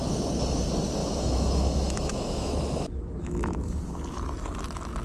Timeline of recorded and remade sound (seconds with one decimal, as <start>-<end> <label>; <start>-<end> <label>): 0.0-1.0 recorded; 1.0-3.8 remade; 3.8-5.0 recorded